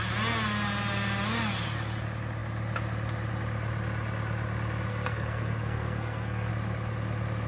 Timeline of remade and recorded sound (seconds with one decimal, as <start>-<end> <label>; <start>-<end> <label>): 0.0-4.9 recorded; 4.9-6.5 remade; 6.5-7.5 recorded